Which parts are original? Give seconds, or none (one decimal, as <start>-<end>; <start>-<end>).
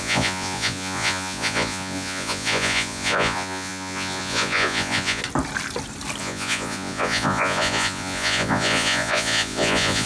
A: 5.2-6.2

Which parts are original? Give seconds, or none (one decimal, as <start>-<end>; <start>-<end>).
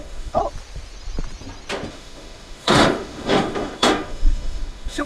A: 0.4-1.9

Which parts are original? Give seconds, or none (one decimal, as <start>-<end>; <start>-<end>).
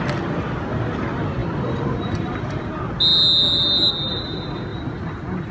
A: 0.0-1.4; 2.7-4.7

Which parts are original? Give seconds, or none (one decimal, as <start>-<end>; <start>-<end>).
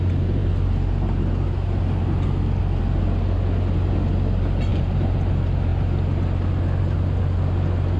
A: 0.0-4.7; 5.3-8.0